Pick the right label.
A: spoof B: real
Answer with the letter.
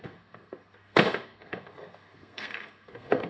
A